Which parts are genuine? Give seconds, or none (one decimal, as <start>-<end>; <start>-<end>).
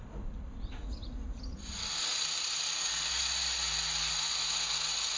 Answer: 0.0-5.2